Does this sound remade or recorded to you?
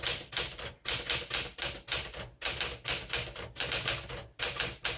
recorded